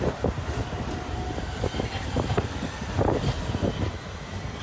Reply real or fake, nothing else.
real